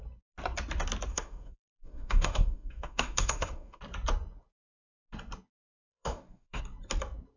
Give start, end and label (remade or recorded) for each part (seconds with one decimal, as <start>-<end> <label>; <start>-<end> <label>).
0.0-1.1 recorded; 1.1-3.8 remade; 3.8-5.9 recorded; 5.9-6.6 remade; 6.6-7.4 recorded